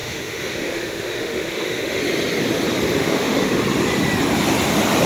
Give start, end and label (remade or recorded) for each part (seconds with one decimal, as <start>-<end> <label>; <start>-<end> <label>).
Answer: 0.0-2.0 remade; 2.0-3.0 recorded; 3.0-3.6 remade; 3.6-5.1 recorded